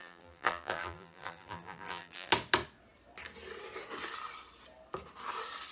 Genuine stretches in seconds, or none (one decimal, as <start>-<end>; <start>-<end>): 2.3-5.7